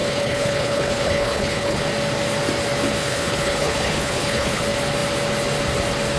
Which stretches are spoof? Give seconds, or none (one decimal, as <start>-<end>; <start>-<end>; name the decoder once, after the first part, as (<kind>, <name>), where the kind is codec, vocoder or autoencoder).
0.0-1.8 (codec, HILCodec); 3.0-4.6